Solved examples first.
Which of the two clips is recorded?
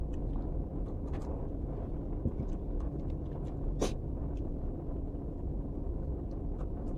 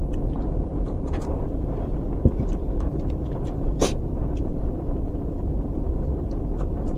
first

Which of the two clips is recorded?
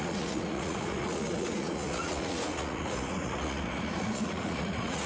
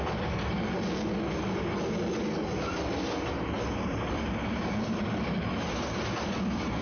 second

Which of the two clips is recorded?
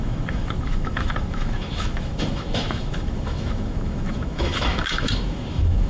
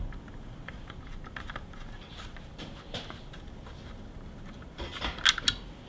second